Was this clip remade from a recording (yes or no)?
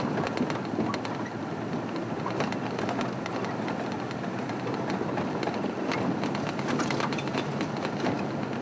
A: no